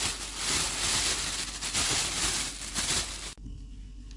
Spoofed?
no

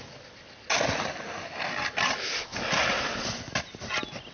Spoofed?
no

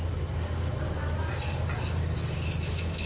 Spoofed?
no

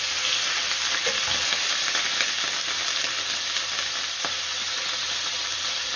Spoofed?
no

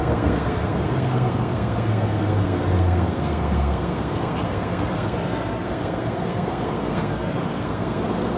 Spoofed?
yes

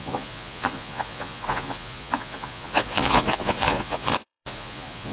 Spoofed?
yes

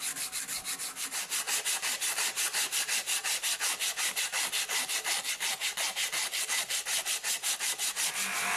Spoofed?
no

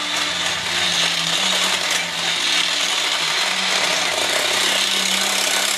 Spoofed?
no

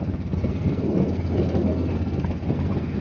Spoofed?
yes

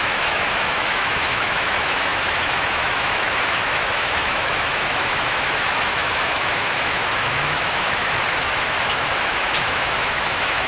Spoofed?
yes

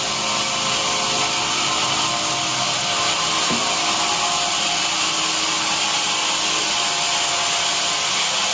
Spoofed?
no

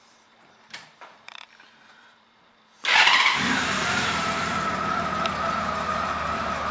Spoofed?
yes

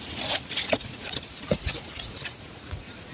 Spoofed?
yes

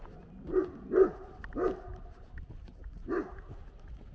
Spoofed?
no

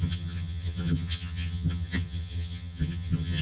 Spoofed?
yes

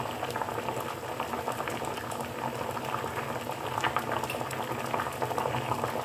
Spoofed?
no